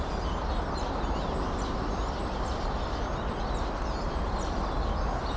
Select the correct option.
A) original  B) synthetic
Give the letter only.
A